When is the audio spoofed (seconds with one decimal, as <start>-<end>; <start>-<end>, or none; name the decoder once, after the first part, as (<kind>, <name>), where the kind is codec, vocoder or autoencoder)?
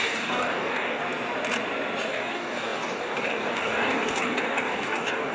0.0-1.0 (codec, DAC); 2.1-5.3